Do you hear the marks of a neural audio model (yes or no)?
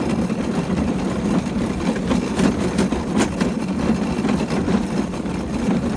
no